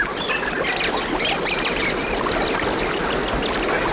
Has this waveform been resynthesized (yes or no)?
no